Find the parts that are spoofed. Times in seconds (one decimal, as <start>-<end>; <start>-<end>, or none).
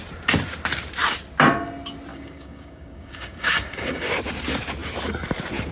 2.1-4.1